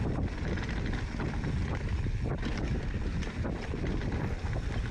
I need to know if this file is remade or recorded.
recorded